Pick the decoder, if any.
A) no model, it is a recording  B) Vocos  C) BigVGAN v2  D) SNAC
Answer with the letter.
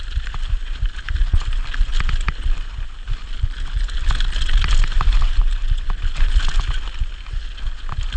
A